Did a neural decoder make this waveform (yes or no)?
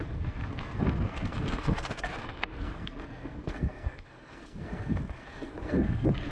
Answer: yes